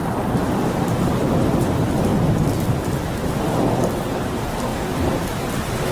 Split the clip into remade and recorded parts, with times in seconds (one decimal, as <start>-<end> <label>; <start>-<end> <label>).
0.0-0.9 remade; 0.9-5.9 recorded